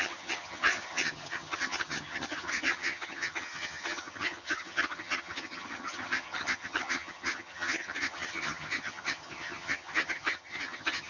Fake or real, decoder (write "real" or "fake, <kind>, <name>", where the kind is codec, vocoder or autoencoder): fake, vocoder, HiFi-GAN